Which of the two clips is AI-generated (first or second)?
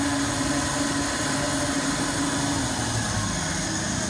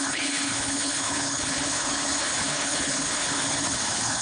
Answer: second